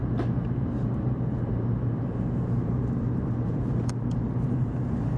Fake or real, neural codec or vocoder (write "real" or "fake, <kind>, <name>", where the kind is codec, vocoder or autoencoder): fake, vocoder, BigVGAN v2